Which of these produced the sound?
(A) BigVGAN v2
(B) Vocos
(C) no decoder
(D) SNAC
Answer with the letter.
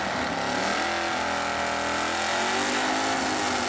C